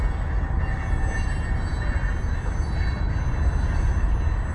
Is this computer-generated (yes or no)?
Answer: no